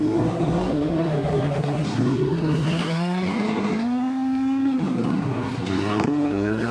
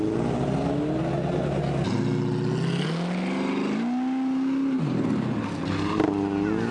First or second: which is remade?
first